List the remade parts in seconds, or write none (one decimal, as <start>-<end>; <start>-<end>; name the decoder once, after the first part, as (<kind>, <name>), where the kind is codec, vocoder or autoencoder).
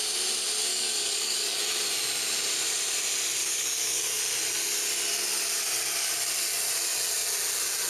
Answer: 0.7-1.6 (codec, DAC); 3.4-4.2